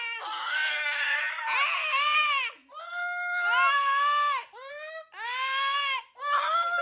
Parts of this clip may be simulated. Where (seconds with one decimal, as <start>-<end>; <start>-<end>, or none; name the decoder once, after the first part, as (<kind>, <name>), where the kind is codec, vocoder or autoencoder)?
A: none